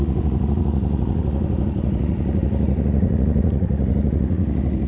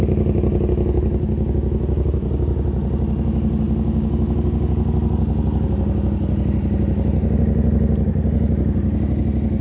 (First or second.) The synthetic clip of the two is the first